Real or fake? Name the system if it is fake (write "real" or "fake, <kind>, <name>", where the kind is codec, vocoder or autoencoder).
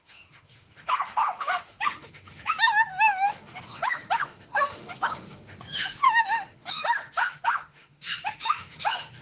fake, autoencoder, DAC-VAE